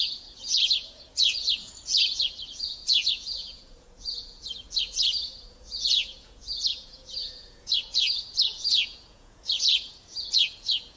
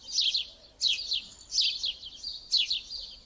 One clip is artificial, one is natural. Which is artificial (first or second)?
first